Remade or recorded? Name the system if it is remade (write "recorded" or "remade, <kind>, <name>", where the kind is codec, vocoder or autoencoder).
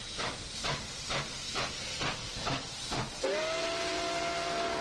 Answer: recorded